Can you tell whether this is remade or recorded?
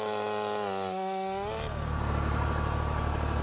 recorded